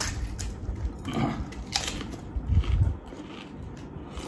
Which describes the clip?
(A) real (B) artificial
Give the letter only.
A